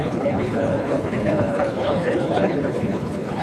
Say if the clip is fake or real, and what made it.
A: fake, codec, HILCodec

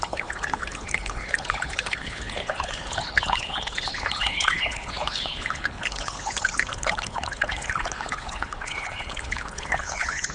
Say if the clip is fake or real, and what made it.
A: fake, codec, HILCodec